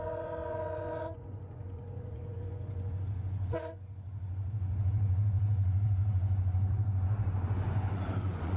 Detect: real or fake fake